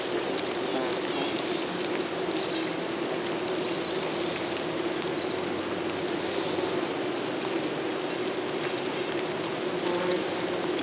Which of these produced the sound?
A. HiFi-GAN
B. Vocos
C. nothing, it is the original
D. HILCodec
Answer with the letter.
C